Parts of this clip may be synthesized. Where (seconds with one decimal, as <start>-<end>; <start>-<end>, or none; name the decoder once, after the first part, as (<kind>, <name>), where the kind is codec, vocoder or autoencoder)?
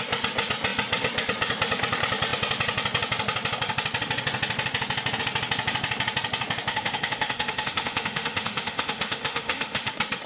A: 6.7-9.9 (autoencoder, DAC-VAE)